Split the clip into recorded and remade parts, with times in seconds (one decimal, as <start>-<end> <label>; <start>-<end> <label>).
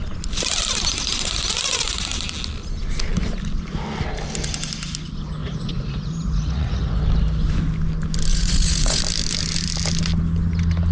0.0-5.4 recorded; 5.4-7.0 remade; 7.0-8.3 recorded; 8.3-9.0 remade; 9.0-10.9 recorded